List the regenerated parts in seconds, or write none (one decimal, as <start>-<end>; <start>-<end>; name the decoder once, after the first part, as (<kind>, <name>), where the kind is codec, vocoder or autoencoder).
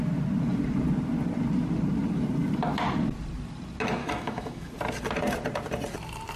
4.0-4.7 (autoencoder, DAC-VAE)